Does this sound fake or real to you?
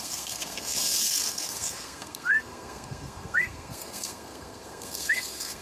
fake